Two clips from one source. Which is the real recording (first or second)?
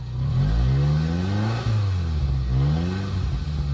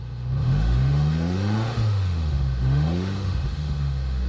first